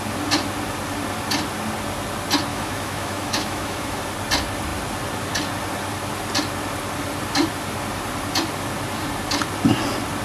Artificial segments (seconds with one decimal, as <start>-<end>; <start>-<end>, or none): 2.5-4.0